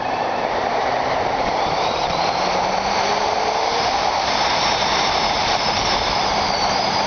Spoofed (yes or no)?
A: yes